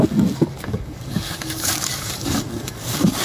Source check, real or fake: fake